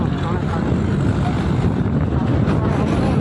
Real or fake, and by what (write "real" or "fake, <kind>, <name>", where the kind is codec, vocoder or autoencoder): real